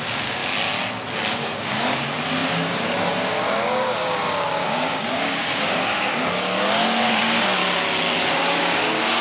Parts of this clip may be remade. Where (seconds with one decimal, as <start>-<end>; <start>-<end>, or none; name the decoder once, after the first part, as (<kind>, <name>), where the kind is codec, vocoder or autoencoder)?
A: 0.0-0.4 (codec, DAC); 1.3-7.6; 8.3-9.2